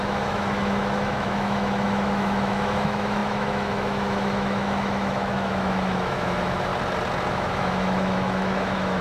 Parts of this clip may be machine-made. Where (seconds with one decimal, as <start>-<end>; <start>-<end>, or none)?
0.0-6.7; 7.3-9.0